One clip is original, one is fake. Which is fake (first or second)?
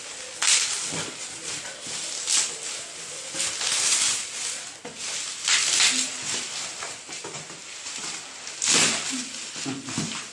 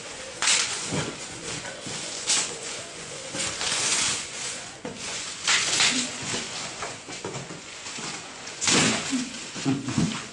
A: second